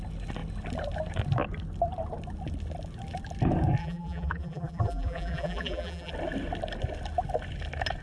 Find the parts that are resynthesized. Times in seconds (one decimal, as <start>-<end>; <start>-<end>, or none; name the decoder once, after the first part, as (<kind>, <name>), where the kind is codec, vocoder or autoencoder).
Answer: 3.8-6.1 (vocoder, BigVGAN v2)